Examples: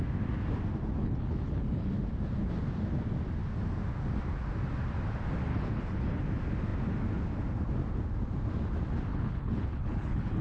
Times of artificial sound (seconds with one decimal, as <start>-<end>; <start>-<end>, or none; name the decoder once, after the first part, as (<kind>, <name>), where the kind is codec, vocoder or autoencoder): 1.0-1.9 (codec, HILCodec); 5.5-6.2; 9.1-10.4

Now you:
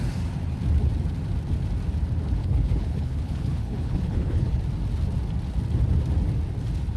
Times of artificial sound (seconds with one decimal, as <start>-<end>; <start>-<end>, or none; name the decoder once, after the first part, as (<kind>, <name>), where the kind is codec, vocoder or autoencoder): 2.4-4.6 (codec, HILCodec)

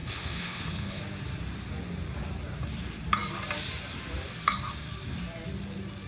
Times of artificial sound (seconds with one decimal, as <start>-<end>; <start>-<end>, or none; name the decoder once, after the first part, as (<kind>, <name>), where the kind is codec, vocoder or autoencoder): 0.0-1.0 (codec, HILCodec)